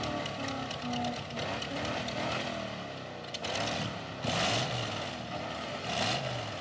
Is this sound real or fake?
real